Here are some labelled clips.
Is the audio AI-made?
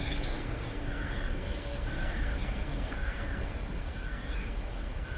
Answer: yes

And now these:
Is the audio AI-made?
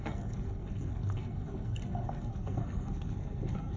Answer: yes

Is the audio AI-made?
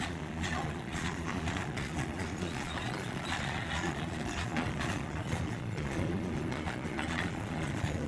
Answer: yes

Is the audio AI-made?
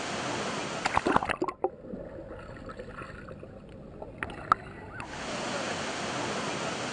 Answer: no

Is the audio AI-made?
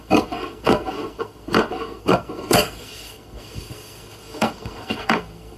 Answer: yes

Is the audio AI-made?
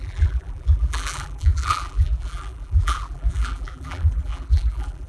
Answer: yes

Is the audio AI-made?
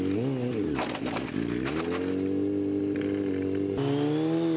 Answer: no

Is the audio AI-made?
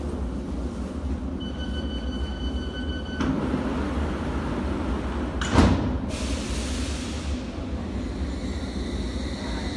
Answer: no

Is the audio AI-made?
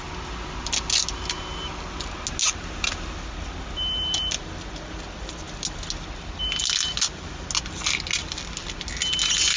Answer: no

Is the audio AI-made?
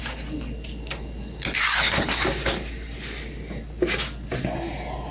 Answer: no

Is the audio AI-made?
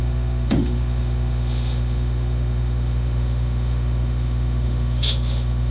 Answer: yes